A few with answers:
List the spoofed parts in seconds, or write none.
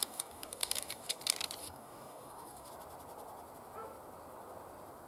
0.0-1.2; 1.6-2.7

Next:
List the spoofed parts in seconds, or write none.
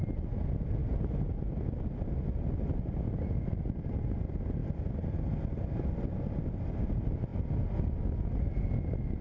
none